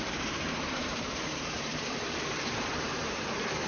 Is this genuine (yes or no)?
no